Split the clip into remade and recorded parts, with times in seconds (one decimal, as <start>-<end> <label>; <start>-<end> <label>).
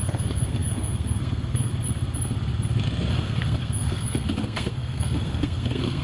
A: 0.0-1.7 remade; 1.7-3.1 recorded; 3.1-6.0 remade